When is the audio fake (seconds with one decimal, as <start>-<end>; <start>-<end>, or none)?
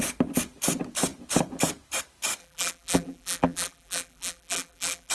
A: 2.4-5.1